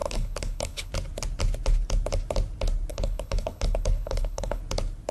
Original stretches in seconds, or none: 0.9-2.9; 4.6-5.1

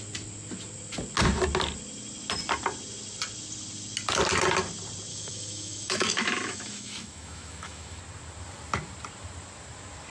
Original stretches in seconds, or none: 0.0-5.1; 8.0-10.1

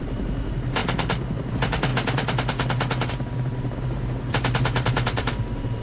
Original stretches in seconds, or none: 0.8-1.5; 1.9-3.1

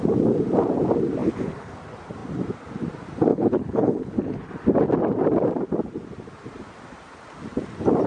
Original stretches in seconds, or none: 0.0-1.2; 1.8-3.3; 4.5-8.1

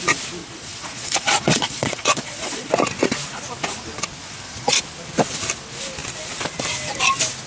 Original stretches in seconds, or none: 0.0-0.4; 2.7-4.2; 4.8-7.5